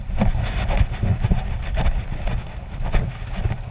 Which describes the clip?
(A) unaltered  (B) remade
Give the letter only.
A